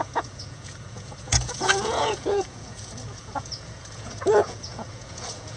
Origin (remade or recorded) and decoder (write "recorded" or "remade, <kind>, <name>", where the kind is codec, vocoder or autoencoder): remade, vocoder, Vocos